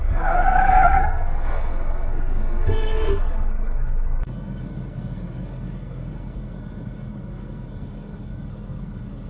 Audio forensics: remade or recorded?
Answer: remade